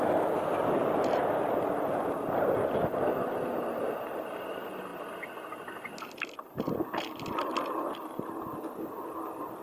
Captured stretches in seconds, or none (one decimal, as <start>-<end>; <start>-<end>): 0.0-9.6